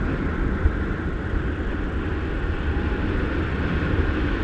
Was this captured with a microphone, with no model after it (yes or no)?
yes